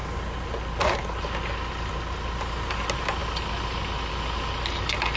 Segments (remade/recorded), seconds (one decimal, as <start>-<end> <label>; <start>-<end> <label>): 0.0-5.2 recorded